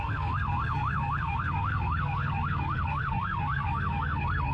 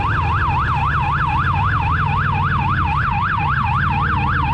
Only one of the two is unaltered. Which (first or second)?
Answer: second